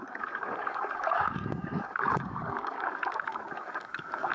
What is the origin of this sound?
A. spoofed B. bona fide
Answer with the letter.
A